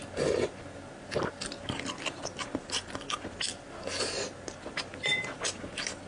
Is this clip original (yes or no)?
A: yes